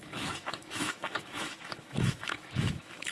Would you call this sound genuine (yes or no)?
no